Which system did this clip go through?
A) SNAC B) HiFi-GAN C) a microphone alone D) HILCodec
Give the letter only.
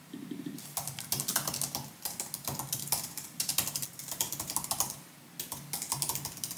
C